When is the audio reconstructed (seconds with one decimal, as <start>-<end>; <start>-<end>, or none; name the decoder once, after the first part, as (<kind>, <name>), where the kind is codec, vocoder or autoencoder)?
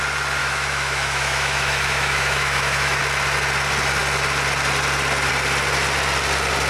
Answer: 0.4-3.0 (autoencoder, DAC-VAE)